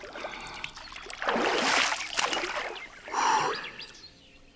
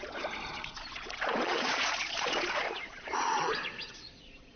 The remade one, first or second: second